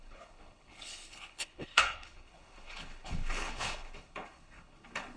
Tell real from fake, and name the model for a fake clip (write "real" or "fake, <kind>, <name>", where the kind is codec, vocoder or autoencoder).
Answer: fake, codec, HILCodec